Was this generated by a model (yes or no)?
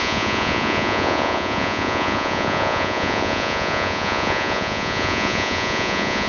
yes